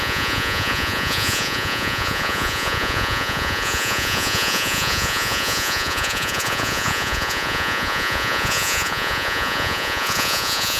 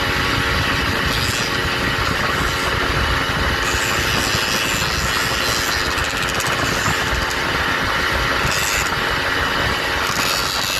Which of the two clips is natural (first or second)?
second